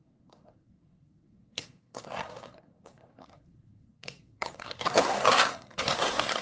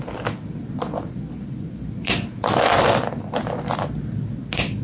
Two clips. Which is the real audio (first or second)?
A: second